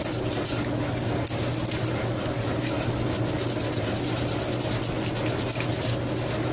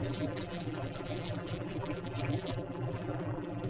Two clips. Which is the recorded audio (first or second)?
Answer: first